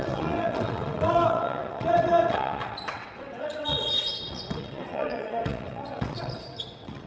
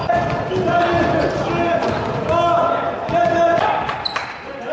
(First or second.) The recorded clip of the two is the second